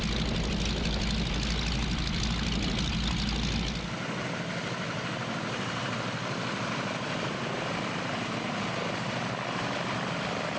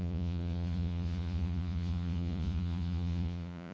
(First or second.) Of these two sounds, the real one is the first